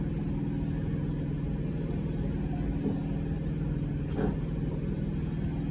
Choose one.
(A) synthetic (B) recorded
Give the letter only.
B